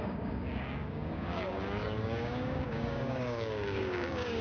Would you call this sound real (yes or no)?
no